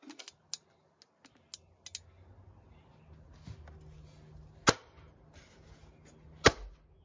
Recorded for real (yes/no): yes